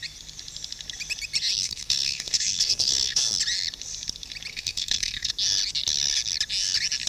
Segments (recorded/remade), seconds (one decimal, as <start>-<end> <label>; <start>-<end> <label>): 0.0-1.6 recorded; 1.6-3.4 remade; 3.4-4.5 recorded; 4.5-5.3 remade; 5.3-7.1 recorded

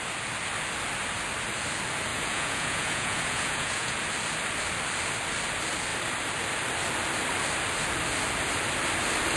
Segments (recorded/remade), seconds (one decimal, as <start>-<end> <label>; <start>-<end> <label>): 0.0-2.1 recorded; 2.1-4.0 remade; 4.0-9.4 recorded

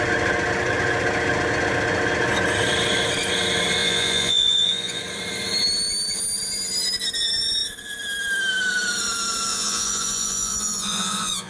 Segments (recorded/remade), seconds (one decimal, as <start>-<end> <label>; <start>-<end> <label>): 0.0-3.8 recorded; 3.8-5.0 remade; 5.0-9.5 recorded; 9.5-11.5 remade

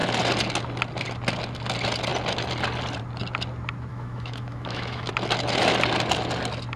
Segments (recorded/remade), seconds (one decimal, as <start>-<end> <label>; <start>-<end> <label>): 0.0-3.9 recorded; 3.9-5.1 remade; 5.1-6.8 recorded

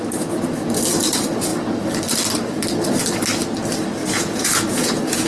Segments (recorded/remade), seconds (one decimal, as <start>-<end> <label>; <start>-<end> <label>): 0.0-4.0 recorded; 4.0-5.3 remade

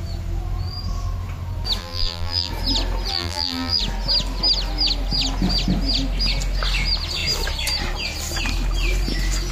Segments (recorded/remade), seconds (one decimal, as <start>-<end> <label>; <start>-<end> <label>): 0.0-1.8 recorded; 1.8-2.5 remade; 2.5-3.1 recorded; 3.1-3.8 remade; 3.8-9.5 recorded